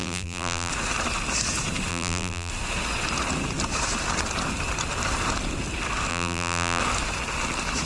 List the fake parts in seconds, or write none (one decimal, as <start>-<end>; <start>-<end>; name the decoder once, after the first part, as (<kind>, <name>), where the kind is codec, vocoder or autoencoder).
0.0-0.7 (vocoder, BigVGAN v2); 1.9-2.5; 6.1-6.8